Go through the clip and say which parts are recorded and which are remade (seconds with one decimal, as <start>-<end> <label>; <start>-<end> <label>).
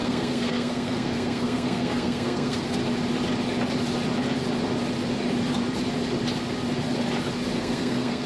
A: 0.0-2.8 remade; 2.8-7.6 recorded; 7.6-8.3 remade